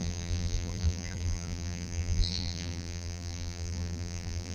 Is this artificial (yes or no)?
yes